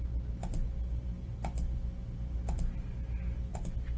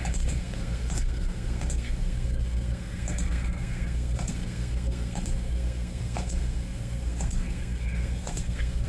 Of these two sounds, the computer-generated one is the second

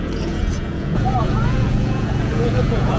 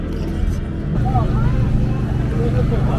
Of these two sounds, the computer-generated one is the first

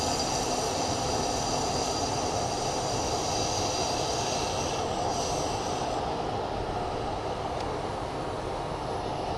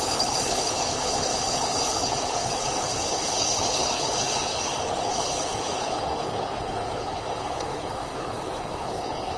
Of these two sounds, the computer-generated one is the second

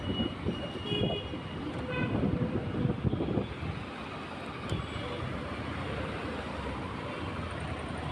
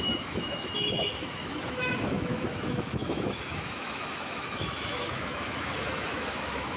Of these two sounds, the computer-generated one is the second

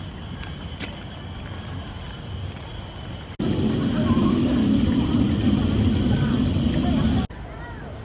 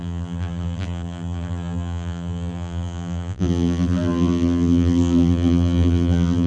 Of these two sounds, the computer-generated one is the second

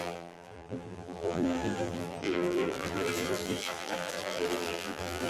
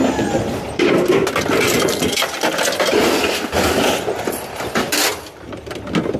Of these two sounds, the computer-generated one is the first